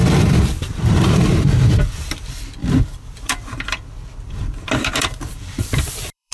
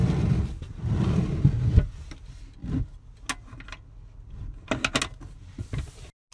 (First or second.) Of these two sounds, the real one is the second